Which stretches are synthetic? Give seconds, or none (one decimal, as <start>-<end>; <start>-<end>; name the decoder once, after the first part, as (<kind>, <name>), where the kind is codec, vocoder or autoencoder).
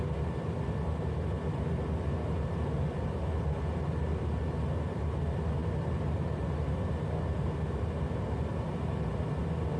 none